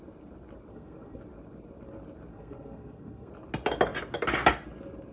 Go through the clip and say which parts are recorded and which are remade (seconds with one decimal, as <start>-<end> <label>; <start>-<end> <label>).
0.0-0.7 recorded; 0.7-1.2 remade; 1.2-2.3 recorded; 2.3-3.3 remade; 3.3-5.1 recorded